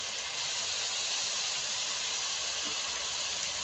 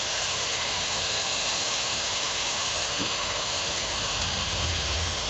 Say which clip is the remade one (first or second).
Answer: second